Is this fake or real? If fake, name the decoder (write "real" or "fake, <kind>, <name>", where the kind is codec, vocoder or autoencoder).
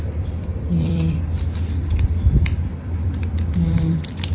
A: fake, vocoder, BigVGAN v2